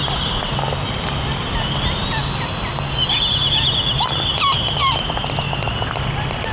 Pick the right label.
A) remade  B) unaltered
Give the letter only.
B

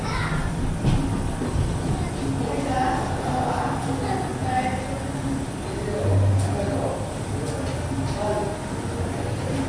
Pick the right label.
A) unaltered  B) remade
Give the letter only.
A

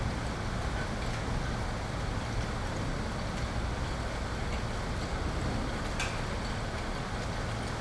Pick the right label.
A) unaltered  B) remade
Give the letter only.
A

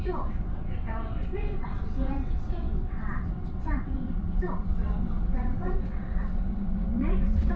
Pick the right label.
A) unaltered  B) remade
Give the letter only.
B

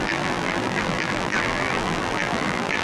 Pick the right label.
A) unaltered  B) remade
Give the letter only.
B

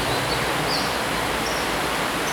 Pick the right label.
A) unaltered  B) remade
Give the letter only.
B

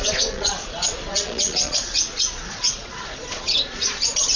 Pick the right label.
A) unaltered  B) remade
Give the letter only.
B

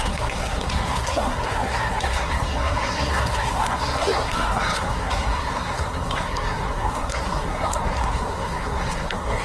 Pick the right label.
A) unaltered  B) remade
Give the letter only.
B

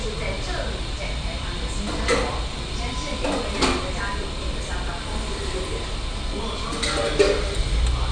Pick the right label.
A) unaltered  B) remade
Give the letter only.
A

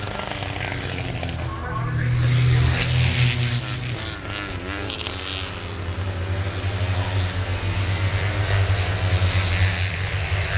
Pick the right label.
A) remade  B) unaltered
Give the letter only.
B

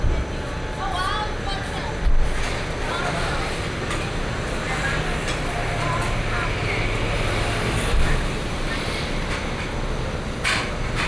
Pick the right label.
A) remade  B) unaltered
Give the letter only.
B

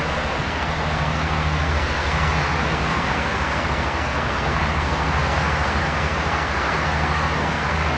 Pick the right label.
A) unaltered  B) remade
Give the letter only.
B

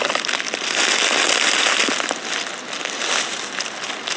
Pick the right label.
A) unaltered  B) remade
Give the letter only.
A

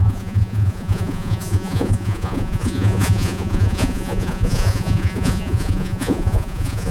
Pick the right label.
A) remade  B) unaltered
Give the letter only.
A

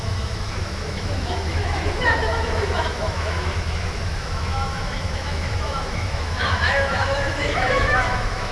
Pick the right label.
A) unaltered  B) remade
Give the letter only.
B